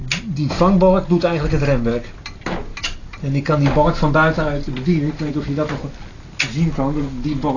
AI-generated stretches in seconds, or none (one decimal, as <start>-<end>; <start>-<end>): none

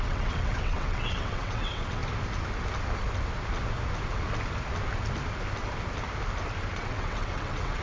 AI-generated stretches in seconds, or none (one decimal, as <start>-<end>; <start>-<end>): 0.0-2.0; 6.7-7.8